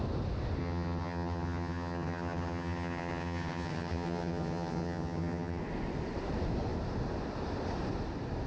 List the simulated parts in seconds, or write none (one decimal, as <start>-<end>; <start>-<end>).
0.6-5.6